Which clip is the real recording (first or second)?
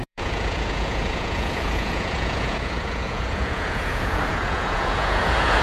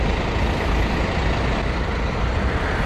second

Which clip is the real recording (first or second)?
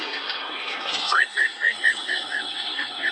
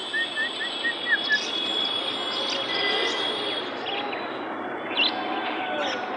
second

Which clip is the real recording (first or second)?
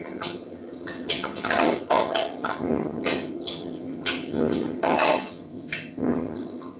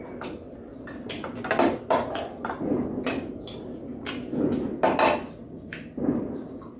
second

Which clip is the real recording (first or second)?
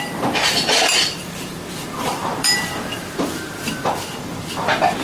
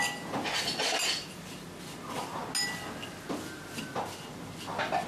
second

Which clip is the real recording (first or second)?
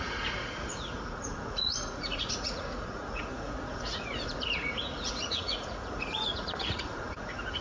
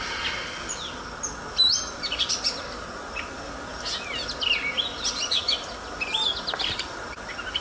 second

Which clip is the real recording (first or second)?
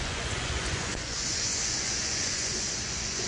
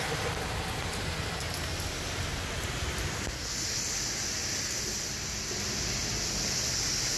second